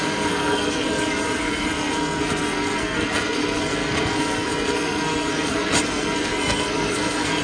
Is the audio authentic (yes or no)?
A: no